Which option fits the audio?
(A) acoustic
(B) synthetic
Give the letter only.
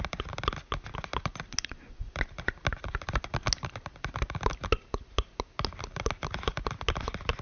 A